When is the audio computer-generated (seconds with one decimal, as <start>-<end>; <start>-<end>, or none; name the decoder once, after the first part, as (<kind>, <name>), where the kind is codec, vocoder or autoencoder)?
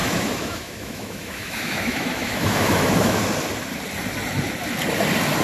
0.0-3.2 (autoencoder, DAC-VAE)